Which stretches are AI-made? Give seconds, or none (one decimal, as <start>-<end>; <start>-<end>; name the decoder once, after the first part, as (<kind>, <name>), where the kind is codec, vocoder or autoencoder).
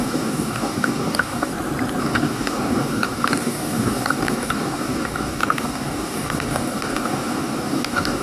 0.0-1.5 (codec, DAC); 2.0-8.2